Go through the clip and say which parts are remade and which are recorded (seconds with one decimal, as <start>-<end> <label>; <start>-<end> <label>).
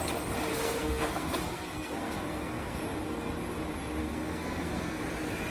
0.0-0.5 recorded; 0.5-2.8 remade; 2.8-4.0 recorded; 4.0-5.0 remade; 5.0-5.5 recorded